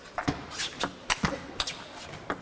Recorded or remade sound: recorded